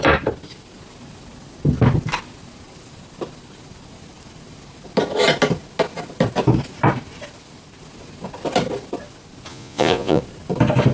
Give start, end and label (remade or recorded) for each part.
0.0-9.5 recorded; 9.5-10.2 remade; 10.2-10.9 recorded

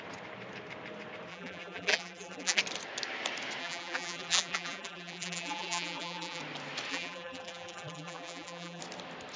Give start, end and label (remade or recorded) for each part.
0.0-1.3 recorded; 1.3-2.6 remade; 2.6-3.6 recorded; 3.6-6.4 remade; 6.4-6.9 recorded; 6.9-8.8 remade; 8.8-9.4 recorded